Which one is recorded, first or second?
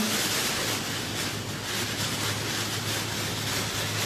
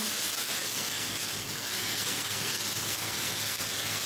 first